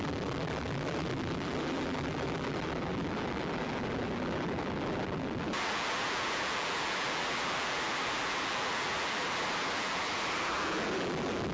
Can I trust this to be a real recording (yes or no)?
no